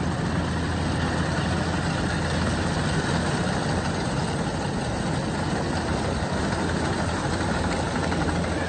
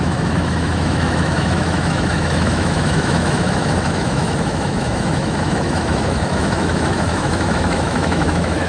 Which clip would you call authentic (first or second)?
first